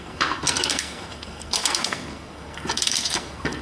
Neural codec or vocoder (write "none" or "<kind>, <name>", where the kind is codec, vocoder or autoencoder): codec, SNAC